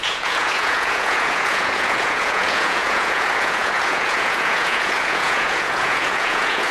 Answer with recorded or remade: remade